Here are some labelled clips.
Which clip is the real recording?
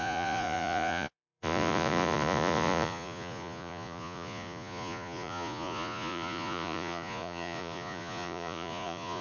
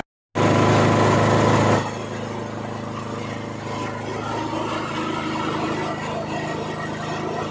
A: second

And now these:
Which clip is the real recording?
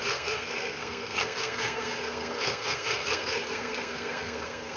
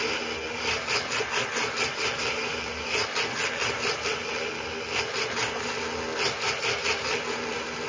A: second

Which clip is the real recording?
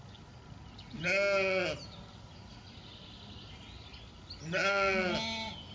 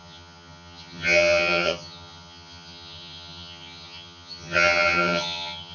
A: first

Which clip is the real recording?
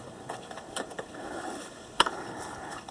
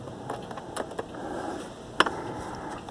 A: second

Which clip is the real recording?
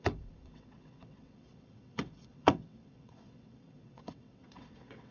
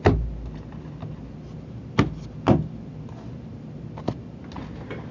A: second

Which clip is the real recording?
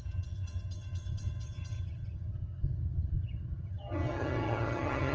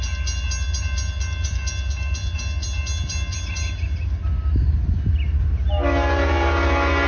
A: second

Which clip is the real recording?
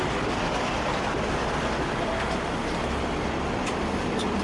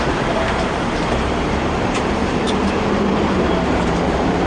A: first